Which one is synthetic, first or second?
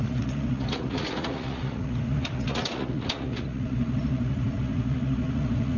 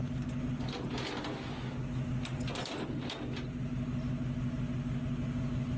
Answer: first